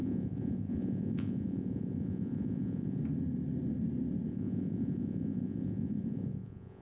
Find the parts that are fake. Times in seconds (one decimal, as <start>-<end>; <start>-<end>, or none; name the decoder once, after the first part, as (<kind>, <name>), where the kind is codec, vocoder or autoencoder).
0.0-3.0 (vocoder, Vocos); 4.3-6.8